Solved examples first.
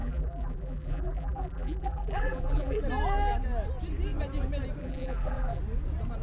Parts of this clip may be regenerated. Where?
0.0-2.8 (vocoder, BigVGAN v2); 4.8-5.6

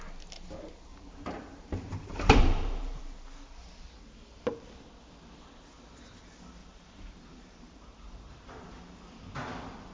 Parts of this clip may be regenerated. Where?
0.9-3.0 (vocoder, BigVGAN v2); 6.6-9.0

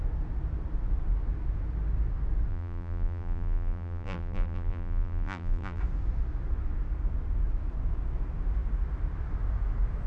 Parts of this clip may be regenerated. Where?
2.5-5.8 (vocoder, BigVGAN v2)

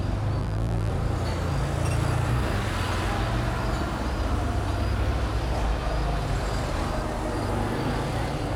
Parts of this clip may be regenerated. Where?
0.4-0.9 (vocoder, BigVGAN v2)

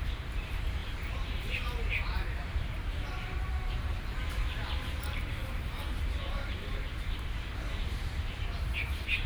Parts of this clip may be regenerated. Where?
0.0-9.3 (vocoder, BigVGAN v2)

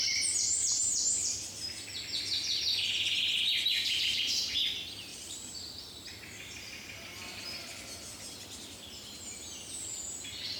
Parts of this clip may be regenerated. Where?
5.1-6.2 (vocoder, BigVGAN v2)